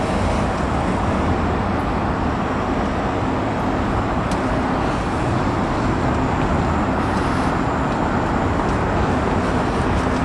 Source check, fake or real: real